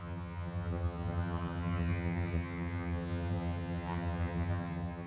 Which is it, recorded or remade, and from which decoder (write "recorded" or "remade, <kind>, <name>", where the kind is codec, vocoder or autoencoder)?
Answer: remade, vocoder, HiFi-GAN